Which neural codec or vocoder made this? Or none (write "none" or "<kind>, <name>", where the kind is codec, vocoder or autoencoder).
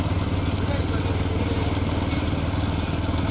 none